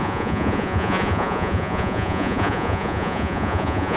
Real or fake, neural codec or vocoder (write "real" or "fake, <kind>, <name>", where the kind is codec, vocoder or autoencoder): fake, vocoder, Vocos